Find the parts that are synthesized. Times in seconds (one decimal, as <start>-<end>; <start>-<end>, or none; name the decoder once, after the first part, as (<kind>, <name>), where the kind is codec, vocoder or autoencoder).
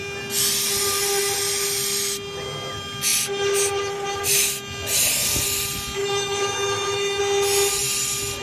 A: 6.0-7.2 (autoencoder, DAC-VAE)